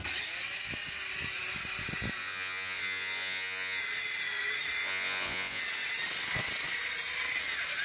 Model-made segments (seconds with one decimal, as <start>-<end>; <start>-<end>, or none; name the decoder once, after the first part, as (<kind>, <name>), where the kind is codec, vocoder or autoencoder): 2.2-3.8 (vocoder, Vocos); 4.8-5.6

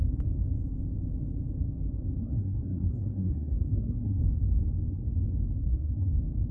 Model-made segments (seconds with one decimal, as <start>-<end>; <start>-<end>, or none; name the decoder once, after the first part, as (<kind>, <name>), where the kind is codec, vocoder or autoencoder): 2.2-4.2 (codec, SNAC); 5.6-6.1

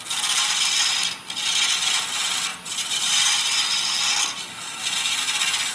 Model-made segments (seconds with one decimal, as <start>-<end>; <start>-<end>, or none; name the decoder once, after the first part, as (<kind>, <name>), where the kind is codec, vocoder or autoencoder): none

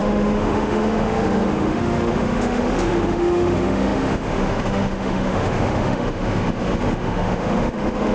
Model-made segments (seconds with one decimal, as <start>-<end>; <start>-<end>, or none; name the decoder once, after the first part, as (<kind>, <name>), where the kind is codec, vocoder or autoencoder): 0.0-8.1 (autoencoder, DAC-VAE)

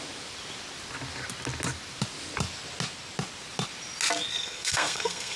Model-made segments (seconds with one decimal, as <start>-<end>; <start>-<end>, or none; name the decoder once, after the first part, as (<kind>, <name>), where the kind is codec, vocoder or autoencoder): 4.3-5.4 (codec, SNAC)

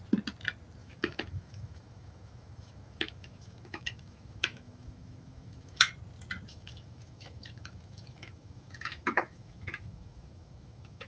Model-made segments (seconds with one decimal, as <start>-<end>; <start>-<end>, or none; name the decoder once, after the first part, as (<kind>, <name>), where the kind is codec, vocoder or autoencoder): 0.8-5.9 (autoencoder, DAC-VAE); 6.5-11.1

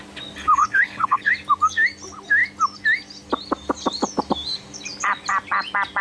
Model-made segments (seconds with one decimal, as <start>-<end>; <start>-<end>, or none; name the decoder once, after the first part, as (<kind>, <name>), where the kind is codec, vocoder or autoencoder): 0.6-1.3 (codec, HILCodec)

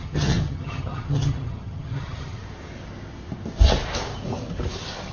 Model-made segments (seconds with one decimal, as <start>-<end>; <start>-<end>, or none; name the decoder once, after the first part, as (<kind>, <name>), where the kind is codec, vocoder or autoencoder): 0.0-2.4 (vocoder, HiFi-GAN)